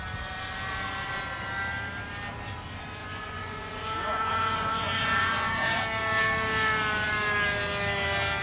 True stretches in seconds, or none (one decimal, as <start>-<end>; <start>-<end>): 0.0-3.0; 5.8-8.4